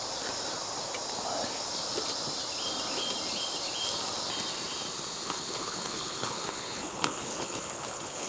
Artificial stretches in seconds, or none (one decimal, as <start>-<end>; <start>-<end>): 5.2-8.3